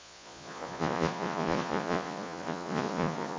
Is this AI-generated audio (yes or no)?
yes